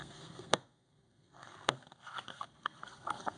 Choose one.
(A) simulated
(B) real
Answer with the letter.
A